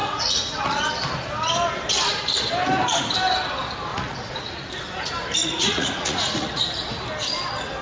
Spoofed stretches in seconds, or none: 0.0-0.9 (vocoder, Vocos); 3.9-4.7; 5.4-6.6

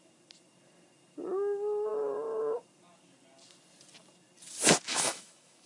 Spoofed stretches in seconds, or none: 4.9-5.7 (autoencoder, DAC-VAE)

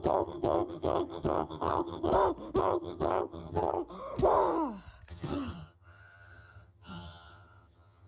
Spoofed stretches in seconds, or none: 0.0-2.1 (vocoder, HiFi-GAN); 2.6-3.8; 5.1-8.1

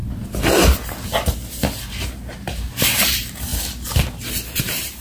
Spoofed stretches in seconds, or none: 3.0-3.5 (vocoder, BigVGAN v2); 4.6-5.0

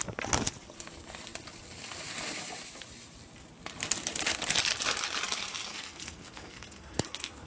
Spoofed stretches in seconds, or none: 5.7-7.5 (codec, SNAC)

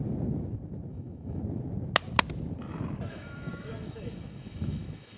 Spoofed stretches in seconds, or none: 0.9-1.4 (autoencoder, DAC-VAE); 3.1-5.2